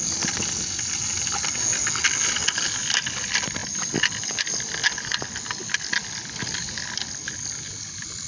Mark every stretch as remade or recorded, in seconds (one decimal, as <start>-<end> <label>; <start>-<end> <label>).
0.0-8.3 recorded